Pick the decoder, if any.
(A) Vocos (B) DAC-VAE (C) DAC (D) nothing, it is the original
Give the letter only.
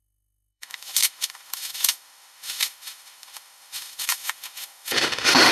B